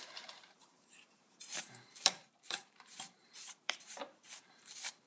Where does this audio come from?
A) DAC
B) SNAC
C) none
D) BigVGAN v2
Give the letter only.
D